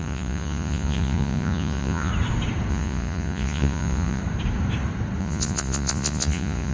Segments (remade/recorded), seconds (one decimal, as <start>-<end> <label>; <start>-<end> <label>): 0.0-2.1 remade; 2.1-2.7 recorded; 2.7-4.2 remade; 4.2-5.2 recorded; 5.2-6.7 remade